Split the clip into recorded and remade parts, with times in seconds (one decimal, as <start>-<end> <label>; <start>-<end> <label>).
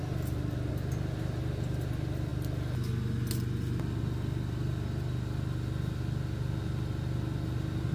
0.0-7.9 recorded